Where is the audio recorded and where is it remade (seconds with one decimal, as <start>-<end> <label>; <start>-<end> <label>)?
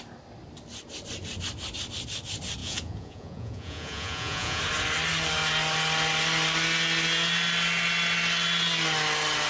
0.0-2.6 recorded; 2.6-4.6 remade; 4.6-9.5 recorded